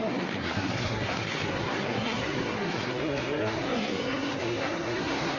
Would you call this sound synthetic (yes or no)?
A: yes